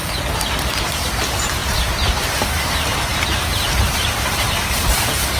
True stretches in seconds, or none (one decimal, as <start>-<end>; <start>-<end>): 0.0-0.8